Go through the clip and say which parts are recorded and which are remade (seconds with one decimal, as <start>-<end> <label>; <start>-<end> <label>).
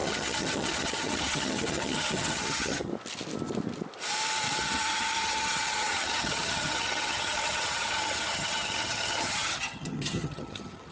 0.0-2.9 remade; 2.9-4.6 recorded; 4.6-10.9 remade